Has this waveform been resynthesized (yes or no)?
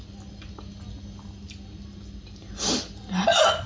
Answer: no